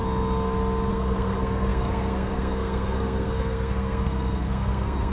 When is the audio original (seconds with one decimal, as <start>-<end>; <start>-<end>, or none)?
0.0-0.9